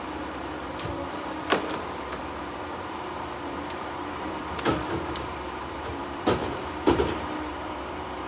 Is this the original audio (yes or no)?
no